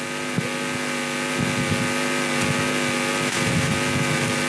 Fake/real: real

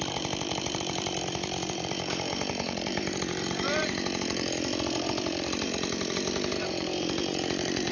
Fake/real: fake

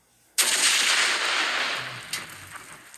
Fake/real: real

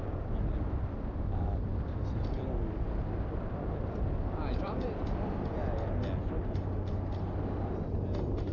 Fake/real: real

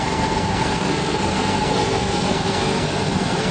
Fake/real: fake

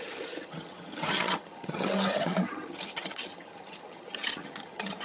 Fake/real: fake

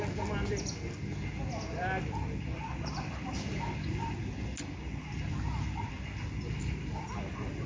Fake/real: real